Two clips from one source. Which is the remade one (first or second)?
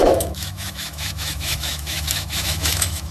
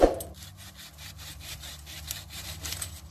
first